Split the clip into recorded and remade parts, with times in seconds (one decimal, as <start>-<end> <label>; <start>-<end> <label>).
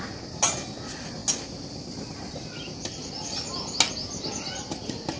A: 0.0-5.2 recorded